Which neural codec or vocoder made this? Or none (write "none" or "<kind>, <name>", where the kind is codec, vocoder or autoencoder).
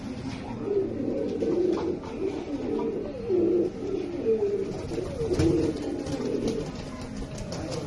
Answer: none